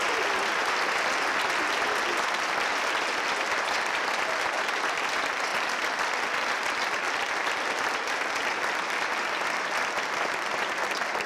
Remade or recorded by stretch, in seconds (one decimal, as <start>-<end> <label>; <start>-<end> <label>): 0.0-5.5 recorded; 5.5-6.2 remade; 6.2-11.3 recorded